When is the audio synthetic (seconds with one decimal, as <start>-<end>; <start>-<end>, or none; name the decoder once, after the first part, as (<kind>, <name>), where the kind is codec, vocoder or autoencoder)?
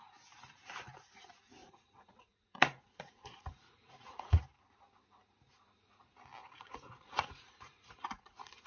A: 1.6-4.4 (vocoder, Vocos); 6.4-8.7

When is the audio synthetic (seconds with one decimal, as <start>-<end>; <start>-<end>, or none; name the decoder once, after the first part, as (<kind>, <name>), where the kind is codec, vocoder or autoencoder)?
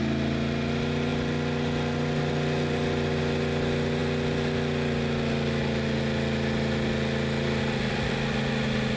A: none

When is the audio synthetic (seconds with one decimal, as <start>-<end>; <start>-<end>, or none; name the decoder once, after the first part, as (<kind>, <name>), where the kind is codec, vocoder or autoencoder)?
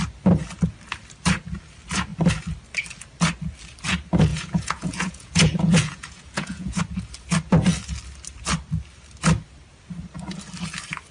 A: 4.3-6.8 (vocoder, Vocos)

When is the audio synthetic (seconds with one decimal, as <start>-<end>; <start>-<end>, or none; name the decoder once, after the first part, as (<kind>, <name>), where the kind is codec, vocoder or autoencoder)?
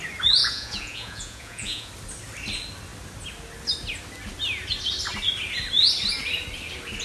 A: 0.4-1.9 (vocoder, Vocos)